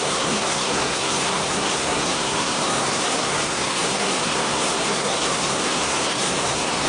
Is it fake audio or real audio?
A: fake